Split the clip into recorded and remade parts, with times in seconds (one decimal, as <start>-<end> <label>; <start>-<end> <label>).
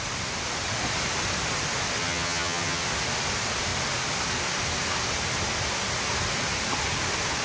0.0-2.0 recorded; 2.0-2.8 remade; 2.8-7.4 recorded